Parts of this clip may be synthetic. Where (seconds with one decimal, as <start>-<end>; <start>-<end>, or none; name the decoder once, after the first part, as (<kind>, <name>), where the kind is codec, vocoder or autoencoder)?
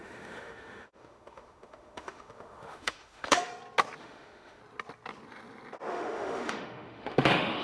0.0-3.5 (autoencoder, DAC-VAE); 4.0-4.6; 5.9-7.6